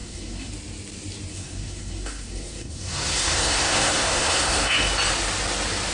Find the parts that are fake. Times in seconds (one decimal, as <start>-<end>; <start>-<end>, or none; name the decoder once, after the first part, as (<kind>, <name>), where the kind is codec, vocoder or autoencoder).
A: 0.0-0.5 (codec, SNAC); 1.3-4.8